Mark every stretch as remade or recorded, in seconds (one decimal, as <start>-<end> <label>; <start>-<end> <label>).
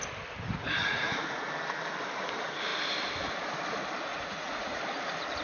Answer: 0.0-0.8 recorded; 0.8-1.5 remade; 1.5-4.1 recorded; 4.1-4.8 remade; 4.8-5.4 recorded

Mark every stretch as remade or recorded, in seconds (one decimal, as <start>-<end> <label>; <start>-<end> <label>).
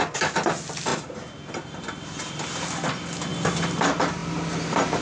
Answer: 0.0-0.9 remade; 0.9-1.5 recorded; 1.5-5.0 remade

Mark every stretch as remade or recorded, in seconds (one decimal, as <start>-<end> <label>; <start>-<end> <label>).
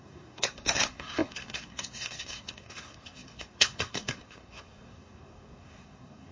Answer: 0.0-6.3 remade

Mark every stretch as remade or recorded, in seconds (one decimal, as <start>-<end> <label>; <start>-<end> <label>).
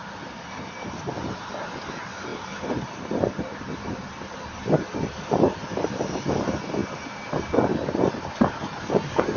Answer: 0.0-9.4 recorded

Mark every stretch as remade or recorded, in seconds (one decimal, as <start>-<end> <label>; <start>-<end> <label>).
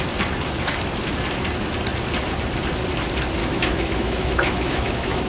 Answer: 0.0-3.4 recorded; 3.4-5.3 remade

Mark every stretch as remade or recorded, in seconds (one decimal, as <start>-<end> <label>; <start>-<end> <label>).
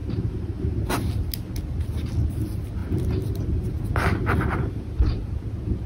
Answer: 0.0-5.9 recorded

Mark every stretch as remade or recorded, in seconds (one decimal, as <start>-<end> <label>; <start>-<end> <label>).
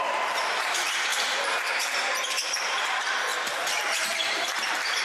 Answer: 0.0-5.0 remade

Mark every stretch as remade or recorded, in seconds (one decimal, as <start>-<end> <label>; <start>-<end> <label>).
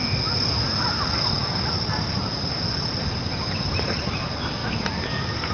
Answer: 0.0-5.5 recorded